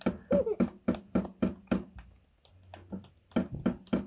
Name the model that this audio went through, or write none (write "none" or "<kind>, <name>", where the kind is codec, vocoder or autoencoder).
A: none